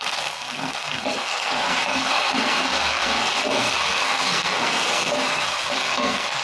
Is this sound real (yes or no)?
no